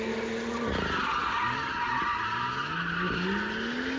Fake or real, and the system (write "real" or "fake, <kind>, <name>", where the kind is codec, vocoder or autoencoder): real